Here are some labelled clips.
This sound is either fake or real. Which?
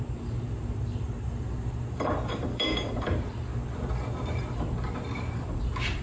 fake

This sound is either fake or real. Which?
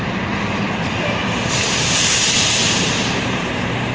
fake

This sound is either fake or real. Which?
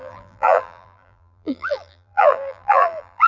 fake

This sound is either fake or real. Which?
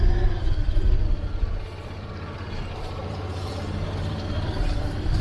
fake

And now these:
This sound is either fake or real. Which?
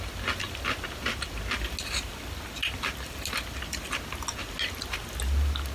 real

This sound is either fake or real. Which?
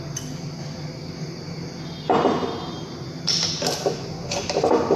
real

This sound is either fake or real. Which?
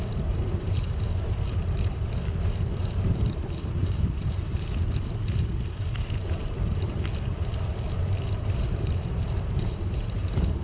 fake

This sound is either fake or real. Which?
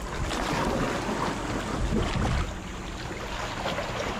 real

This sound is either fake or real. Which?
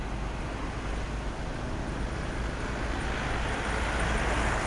real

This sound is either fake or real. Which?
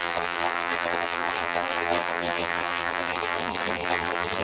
fake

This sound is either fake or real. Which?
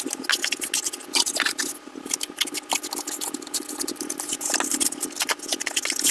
real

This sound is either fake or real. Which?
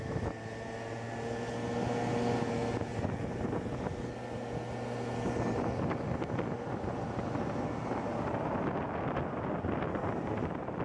real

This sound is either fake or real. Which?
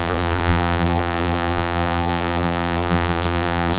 fake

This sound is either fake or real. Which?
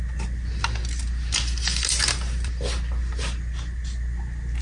real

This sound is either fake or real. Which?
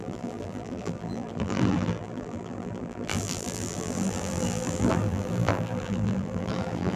fake